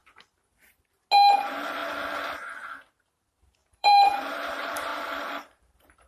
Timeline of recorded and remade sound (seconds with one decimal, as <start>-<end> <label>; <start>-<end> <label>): 0.0-1.4 recorded; 1.4-1.8 remade; 1.8-2.9 recorded; 2.9-6.1 remade